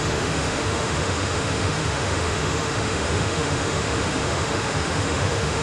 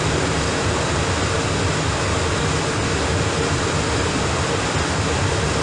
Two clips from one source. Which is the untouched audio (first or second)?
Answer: second